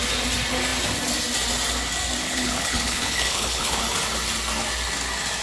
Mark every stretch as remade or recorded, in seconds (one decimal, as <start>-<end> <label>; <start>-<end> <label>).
0.0-2.2 recorded; 2.2-3.8 remade; 3.8-5.4 recorded